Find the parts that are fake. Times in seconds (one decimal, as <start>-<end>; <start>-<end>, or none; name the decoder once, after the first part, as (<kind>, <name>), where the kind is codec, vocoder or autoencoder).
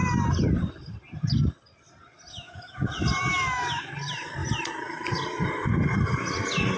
2.3-2.9 (autoencoder, DAC-VAE); 3.3-3.9